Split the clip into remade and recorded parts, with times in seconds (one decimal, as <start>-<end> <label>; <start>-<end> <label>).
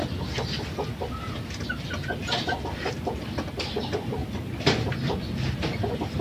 0.0-6.2 recorded